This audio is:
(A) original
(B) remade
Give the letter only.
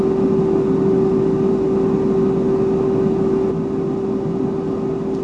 A